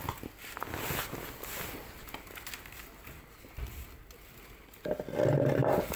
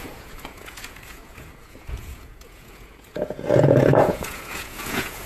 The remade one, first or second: second